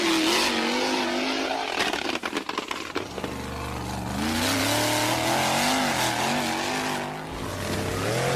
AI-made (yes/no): no